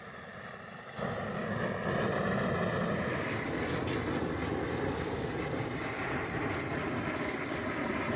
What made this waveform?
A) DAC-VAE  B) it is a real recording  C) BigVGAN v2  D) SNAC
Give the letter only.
B